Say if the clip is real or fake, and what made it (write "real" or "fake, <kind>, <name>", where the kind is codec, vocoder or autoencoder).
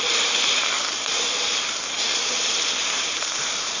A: fake, vocoder, BigVGAN v2